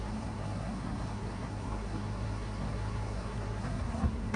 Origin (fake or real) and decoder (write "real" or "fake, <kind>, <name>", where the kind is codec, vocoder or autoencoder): fake, codec, SNAC